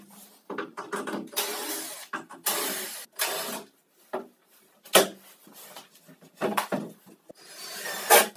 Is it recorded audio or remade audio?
recorded